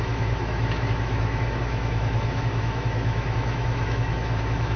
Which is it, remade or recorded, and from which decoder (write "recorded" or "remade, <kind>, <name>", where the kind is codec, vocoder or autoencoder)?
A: remade, autoencoder, DAC-VAE